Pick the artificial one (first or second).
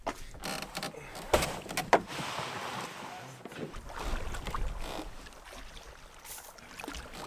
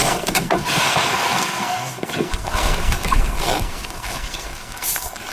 second